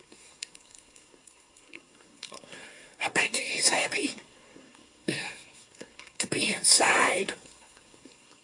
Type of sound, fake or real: fake